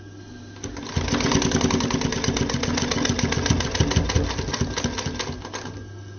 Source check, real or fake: real